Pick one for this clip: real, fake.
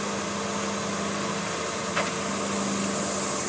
real